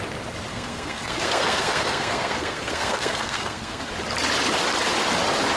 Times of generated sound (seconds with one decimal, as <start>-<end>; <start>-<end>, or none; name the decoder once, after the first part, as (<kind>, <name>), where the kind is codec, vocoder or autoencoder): 0.5-3.9 (codec, SNAC)